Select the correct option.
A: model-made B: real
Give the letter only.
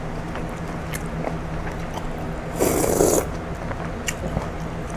B